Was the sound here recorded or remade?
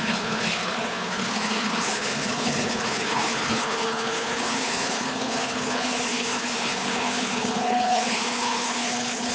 remade